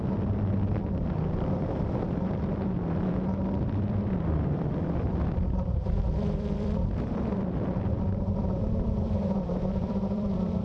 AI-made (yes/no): yes